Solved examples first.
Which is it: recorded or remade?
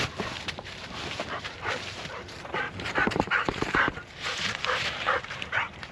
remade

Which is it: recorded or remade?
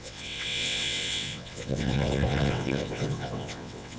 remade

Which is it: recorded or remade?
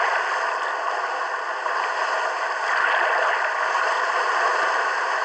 recorded